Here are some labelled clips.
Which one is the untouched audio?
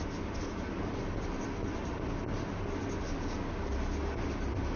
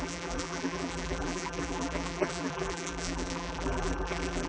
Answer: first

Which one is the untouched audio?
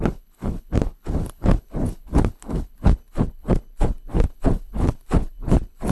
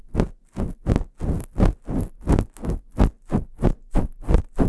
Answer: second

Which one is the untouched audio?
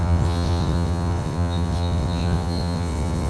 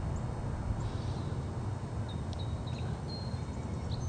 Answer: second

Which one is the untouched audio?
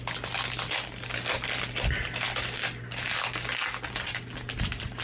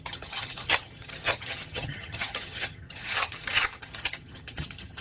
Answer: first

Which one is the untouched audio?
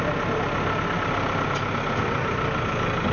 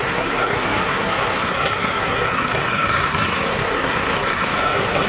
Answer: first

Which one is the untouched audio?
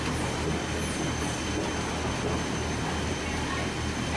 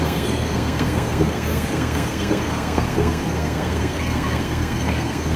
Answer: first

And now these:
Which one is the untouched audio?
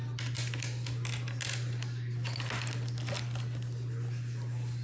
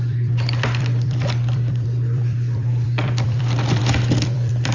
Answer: first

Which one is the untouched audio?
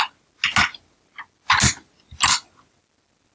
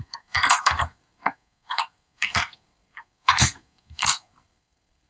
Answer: first